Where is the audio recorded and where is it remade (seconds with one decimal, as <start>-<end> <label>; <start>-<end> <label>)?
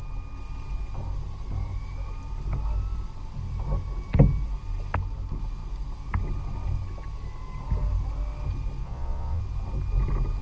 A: 0.0-8.8 recorded; 8.8-9.4 remade; 9.4-10.4 recorded